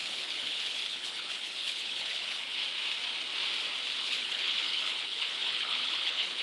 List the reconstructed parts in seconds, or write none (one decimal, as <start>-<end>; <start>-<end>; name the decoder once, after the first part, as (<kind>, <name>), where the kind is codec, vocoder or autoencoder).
0.0-2.6 (codec, HILCodec); 4.0-6.4